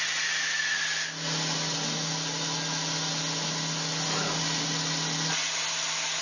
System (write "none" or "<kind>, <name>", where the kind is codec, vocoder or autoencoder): none